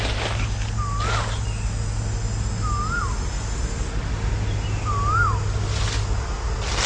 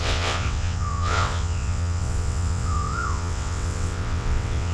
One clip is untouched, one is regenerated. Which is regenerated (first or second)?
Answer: second